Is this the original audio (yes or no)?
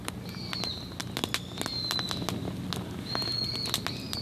yes